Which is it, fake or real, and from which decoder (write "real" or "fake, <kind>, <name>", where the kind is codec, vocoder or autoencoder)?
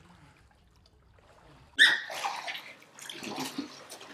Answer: real